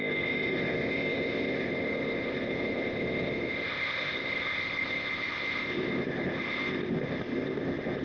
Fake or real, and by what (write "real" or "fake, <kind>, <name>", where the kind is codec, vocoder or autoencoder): fake, codec, ZipCodec